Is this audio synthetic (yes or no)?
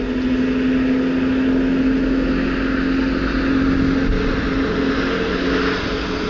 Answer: no